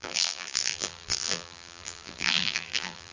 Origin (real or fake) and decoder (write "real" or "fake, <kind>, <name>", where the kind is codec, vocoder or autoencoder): fake, vocoder, BigVGAN v2